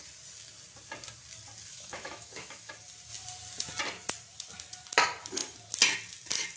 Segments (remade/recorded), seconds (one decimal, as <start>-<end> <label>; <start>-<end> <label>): 0.0-1.7 recorded; 1.7-2.7 remade; 2.7-6.6 recorded